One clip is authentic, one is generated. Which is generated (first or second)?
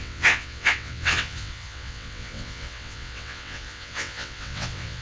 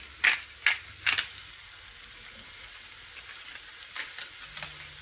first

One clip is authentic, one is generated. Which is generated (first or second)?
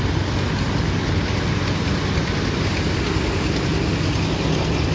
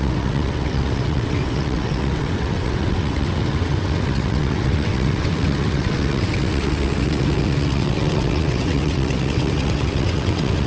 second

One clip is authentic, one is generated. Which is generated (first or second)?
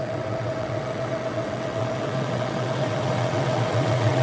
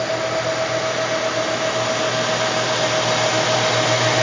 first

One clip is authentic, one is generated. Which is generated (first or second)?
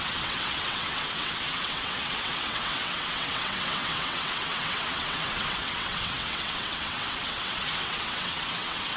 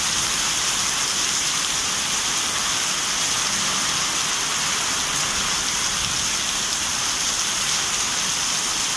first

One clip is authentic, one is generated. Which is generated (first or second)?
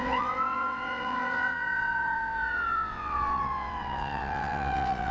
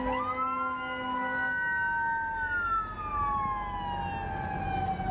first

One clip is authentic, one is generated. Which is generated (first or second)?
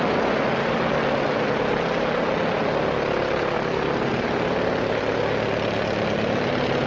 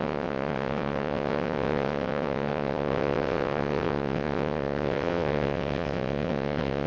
second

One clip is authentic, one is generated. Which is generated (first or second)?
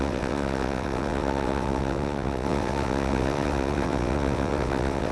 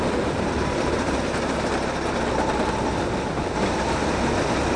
first